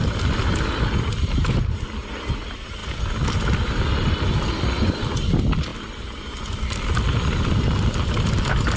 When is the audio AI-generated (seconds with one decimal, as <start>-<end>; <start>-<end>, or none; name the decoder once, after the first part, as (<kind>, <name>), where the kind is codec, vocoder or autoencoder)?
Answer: none